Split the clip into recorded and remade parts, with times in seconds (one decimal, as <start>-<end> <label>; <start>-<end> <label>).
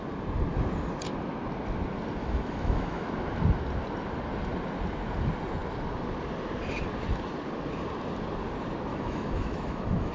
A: 0.0-2.2 recorded; 2.2-3.1 remade; 3.1-8.9 recorded; 8.9-10.1 remade